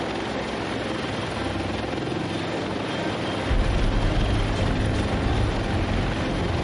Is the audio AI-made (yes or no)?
no